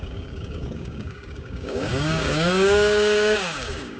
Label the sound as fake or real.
fake